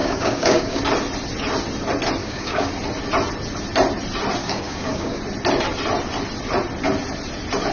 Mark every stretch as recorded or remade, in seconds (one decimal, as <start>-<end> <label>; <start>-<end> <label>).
0.0-0.8 remade; 0.8-2.2 recorded; 2.2-2.7 remade; 2.7-4.4 recorded; 4.4-5.2 remade; 5.2-7.7 recorded